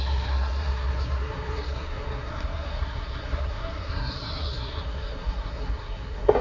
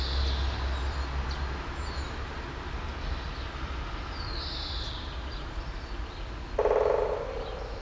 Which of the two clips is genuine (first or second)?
second